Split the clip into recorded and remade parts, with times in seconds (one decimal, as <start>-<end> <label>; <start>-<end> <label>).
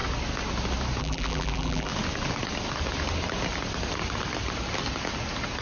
0.0-1.0 recorded; 1.0-1.9 remade; 1.9-5.6 recorded